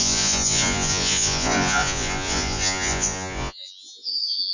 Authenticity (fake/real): fake